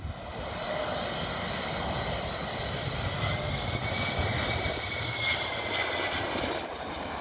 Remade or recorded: recorded